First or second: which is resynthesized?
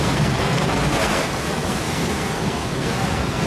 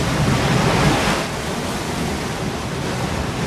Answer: first